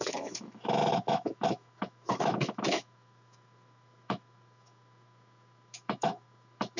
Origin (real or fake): fake